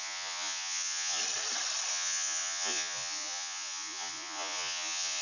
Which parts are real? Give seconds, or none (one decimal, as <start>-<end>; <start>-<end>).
1.2-1.9

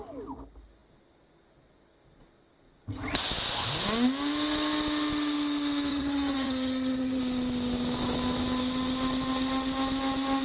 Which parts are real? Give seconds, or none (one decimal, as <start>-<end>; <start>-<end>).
0.0-5.9; 7.2-10.4

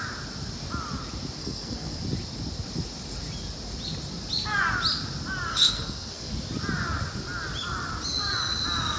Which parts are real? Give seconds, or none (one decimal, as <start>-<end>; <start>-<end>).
0.0-1.4; 2.0-5.5; 6.3-9.0

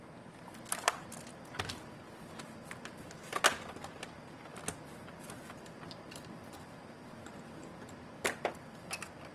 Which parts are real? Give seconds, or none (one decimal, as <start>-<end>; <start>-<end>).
0.0-9.3

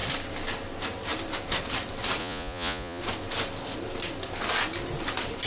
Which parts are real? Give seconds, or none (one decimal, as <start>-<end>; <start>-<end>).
0.0-2.2; 3.0-5.5

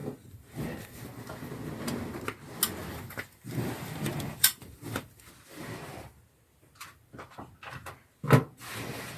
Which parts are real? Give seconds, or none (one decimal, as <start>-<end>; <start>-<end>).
1.4-2.8; 5.3-9.2

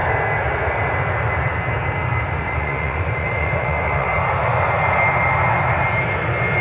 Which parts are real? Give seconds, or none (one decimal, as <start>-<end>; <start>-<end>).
0.0-2.4; 4.1-6.6

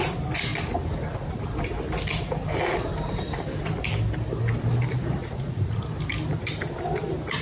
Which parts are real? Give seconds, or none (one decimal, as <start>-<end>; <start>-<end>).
0.0-5.2; 5.8-7.4